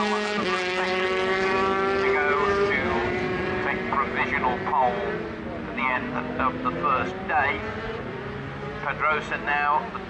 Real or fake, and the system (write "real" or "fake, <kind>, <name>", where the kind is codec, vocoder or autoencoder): real